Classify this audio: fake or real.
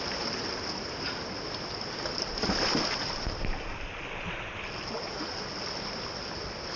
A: real